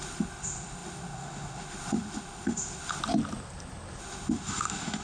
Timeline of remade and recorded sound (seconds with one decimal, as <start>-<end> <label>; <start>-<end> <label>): 0.0-3.0 remade; 3.0-4.0 recorded; 4.0-5.0 remade